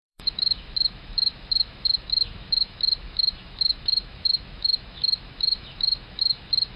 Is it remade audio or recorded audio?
remade